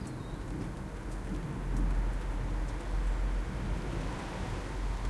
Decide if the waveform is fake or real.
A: real